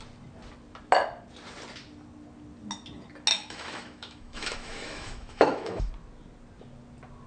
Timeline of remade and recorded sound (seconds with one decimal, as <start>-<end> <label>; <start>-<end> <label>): 0.0-3.3 recorded; 3.3-5.9 remade; 5.9-7.3 recorded